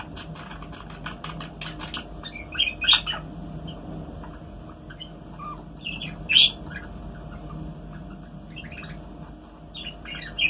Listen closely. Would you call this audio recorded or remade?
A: recorded